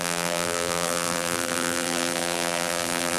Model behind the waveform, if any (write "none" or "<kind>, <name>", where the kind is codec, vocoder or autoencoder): vocoder, BigVGAN v2